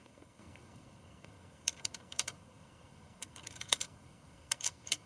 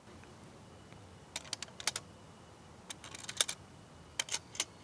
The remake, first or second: first